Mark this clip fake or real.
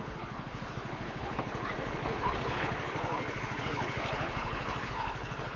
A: fake